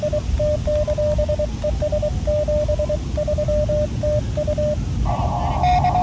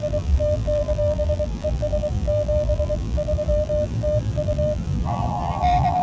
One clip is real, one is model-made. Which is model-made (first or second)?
second